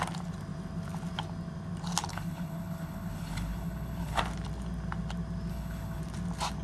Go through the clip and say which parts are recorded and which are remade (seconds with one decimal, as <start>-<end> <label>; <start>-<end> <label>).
0.0-2.1 recorded; 2.1-4.2 remade; 4.2-5.5 recorded; 5.5-6.0 remade; 6.0-6.6 recorded